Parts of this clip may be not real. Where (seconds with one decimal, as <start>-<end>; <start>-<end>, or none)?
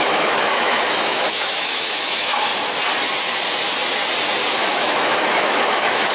0.0-2.5; 4.7-6.1